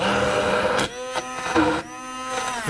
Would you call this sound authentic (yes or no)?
yes